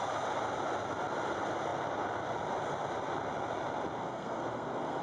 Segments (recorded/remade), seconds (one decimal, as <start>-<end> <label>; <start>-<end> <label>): 0.0-4.0 recorded; 4.0-5.0 remade